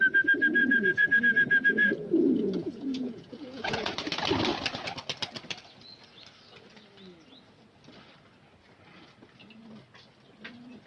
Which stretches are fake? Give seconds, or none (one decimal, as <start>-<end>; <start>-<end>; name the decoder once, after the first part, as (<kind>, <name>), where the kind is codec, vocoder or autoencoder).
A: 0.6-1.2 (vocoder, Vocos); 1.8-3.9